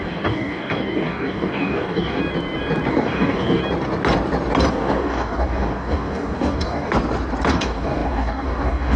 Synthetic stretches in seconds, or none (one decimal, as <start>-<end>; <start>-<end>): 0.0-2.2; 2.9-3.6; 4.7-6.9; 7.5-9.0